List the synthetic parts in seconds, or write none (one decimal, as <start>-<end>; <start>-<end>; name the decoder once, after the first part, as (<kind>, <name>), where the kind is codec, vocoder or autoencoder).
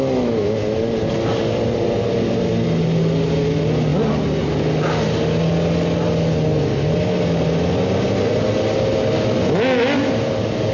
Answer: none